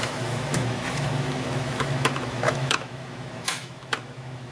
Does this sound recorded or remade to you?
remade